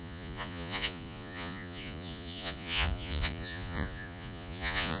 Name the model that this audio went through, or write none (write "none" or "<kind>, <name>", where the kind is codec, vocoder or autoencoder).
vocoder, Vocos